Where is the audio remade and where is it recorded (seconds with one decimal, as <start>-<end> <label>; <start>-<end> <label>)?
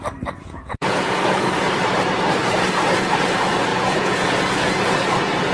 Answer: 0.0-0.4 recorded; 0.4-1.5 remade; 1.5-3.7 recorded; 3.7-4.8 remade; 4.8-5.5 recorded